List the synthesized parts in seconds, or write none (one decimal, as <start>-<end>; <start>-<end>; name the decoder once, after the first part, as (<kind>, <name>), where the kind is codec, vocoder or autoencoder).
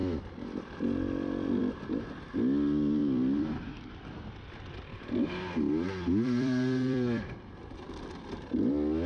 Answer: 3.0-8.0 (vocoder, BigVGAN v2)